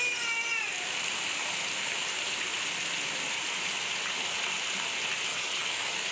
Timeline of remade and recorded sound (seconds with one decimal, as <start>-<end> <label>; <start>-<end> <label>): 0.0-5.3 recorded; 5.3-6.1 remade